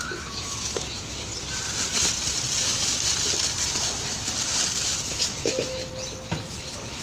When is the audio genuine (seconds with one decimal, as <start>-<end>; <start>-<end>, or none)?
1.3-5.1; 5.8-6.4